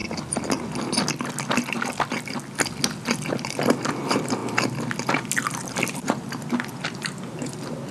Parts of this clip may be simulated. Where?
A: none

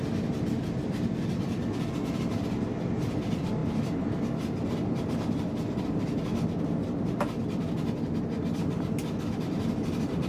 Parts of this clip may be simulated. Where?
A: none

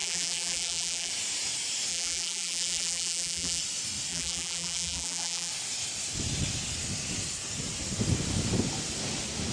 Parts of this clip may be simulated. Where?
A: 0.0-1.1; 1.9-3.6; 4.1-5.5